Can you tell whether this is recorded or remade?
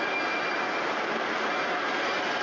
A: recorded